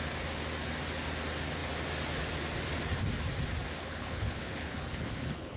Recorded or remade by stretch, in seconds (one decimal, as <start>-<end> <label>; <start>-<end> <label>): 0.0-3.8 recorded; 3.8-5.6 remade